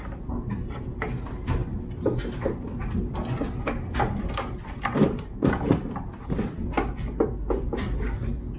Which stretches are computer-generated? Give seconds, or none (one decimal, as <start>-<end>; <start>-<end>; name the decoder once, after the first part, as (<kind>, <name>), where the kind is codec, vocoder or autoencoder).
0.0-1.6 (vocoder, BigVGAN v2); 4.0-8.6